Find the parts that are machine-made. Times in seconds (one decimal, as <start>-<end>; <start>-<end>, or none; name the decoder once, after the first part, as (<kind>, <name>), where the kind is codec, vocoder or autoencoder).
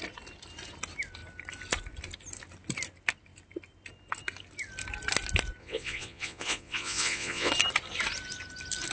5.6-7.5 (vocoder, Vocos)